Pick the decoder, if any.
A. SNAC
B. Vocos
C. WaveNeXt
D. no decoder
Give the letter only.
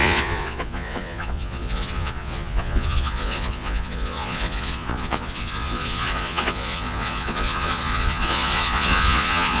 B